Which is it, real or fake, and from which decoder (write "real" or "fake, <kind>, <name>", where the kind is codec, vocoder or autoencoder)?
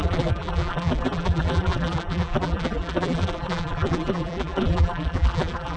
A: fake, vocoder, BigVGAN v2